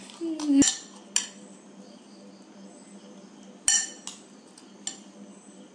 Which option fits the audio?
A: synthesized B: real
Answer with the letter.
B